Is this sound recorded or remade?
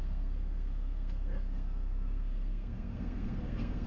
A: remade